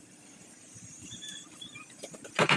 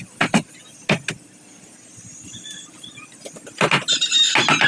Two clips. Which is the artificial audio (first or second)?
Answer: first